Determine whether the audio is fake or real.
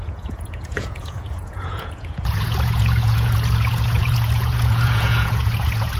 fake